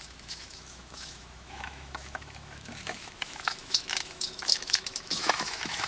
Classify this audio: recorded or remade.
remade